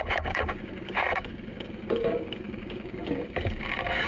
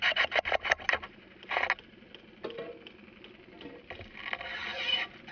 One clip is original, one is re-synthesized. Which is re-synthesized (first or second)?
first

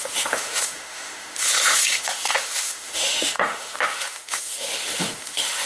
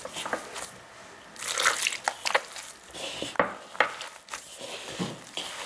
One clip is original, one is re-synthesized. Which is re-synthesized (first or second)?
first